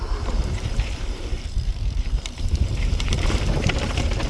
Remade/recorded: remade